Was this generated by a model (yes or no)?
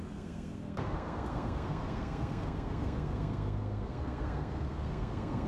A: yes